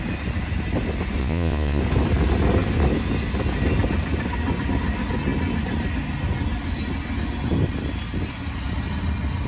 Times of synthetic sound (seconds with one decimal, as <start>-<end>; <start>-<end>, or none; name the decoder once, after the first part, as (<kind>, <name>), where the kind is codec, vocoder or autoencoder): 1.2-1.8 (vocoder, Vocos)